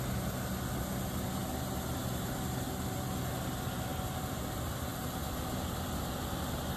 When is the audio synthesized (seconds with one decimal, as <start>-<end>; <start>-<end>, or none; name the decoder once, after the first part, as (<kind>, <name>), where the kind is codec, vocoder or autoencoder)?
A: 3.9-4.9 (vocoder, BigVGAN v2)